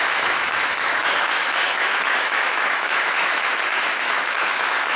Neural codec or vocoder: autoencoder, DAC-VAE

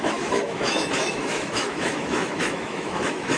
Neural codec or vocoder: autoencoder, DAC-VAE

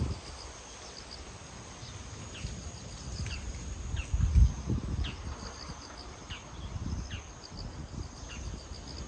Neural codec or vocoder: none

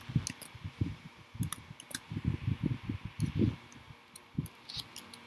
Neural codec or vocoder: none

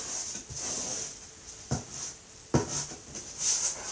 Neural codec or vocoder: none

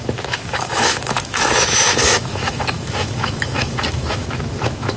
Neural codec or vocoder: autoencoder, DAC-VAE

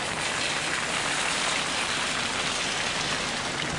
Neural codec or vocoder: none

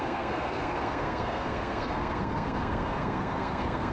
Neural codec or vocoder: codec, SNAC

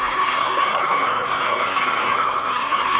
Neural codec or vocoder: codec, SNAC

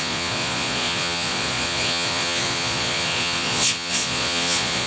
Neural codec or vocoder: vocoder, Vocos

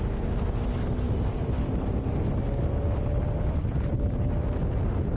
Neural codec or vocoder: none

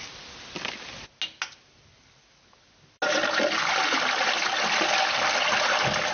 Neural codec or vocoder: none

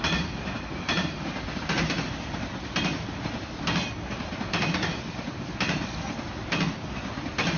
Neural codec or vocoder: none